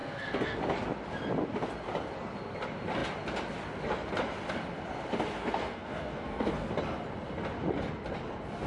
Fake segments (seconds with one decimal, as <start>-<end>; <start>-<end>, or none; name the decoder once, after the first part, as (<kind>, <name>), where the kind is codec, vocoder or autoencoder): 0.0-0.6 (codec, SNAC); 5.4-6.7